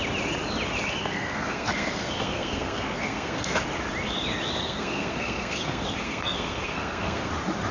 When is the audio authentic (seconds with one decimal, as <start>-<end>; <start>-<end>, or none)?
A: 0.0-1.0; 3.5-4.6; 7.3-7.7